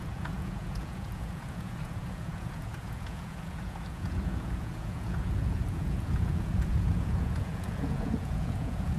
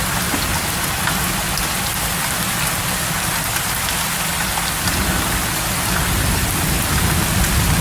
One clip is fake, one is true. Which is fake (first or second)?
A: first